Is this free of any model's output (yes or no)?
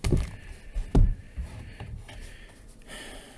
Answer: yes